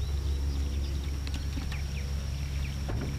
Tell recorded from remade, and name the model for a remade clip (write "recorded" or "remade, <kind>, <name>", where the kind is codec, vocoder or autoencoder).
recorded